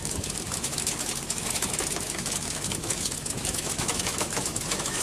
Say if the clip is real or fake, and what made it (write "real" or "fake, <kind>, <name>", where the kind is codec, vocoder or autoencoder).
fake, autoencoder, DAC-VAE